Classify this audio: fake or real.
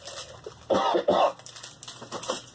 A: real